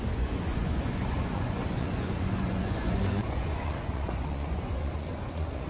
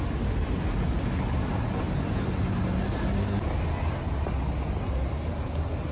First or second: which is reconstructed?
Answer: first